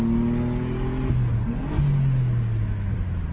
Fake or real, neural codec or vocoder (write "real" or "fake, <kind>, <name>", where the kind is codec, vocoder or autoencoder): real